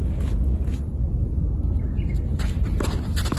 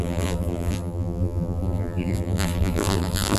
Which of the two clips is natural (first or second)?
first